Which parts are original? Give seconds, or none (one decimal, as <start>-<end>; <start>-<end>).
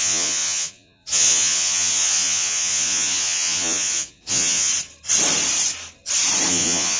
4.7-6.5